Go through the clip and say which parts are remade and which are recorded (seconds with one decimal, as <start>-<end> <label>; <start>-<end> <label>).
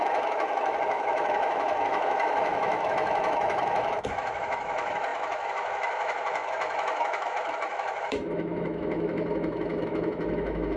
0.0-10.8 remade